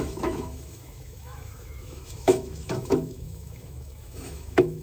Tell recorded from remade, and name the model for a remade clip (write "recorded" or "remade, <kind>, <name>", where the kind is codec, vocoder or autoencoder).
remade, autoencoder, DAC-VAE